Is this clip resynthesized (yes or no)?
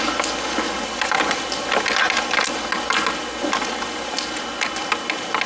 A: no